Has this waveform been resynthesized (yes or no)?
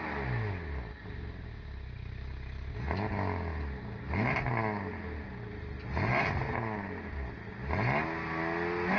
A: no